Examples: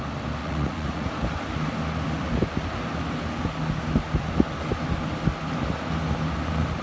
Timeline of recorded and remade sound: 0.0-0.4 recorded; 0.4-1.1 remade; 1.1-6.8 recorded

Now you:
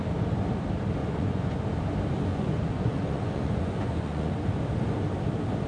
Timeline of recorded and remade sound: 0.0-1.0 recorded; 1.0-1.6 remade; 1.6-2.3 recorded; 2.3-4.3 remade; 4.3-5.7 recorded

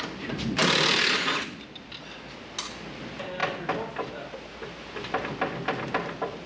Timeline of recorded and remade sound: 0.0-6.5 recorded

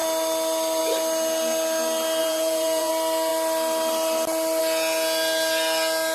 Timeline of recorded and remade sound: 0.0-2.2 recorded; 2.2-2.9 remade; 2.9-6.1 recorded

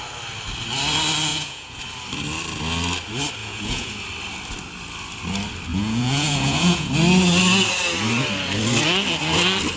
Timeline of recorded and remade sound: 0.0-1.3 recorded; 1.3-1.8 remade; 1.8-3.4 recorded; 3.4-3.9 remade; 3.9-5.7 recorded; 5.7-6.9 remade; 6.9-9.8 recorded

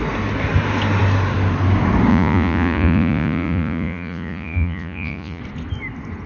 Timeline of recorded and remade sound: 0.0-2.1 recorded; 2.1-5.4 remade; 5.4-6.3 recorded

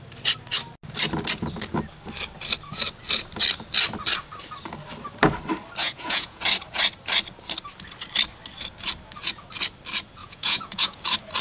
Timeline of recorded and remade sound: 0.0-5.8 recorded; 5.8-6.4 remade; 6.4-10.2 recorded; 10.2-11.0 remade; 11.0-11.4 recorded

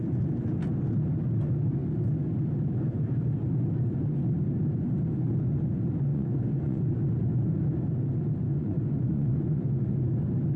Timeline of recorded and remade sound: 0.0-6.1 recorded; 6.1-6.8 remade; 6.8-8.5 recorded; 8.5-10.1 remade; 10.1-10.6 recorded